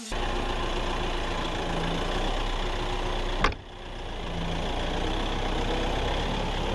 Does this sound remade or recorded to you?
recorded